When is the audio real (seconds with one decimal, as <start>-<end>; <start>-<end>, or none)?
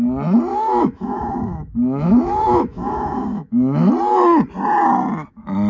0.0-0.5; 3.9-5.7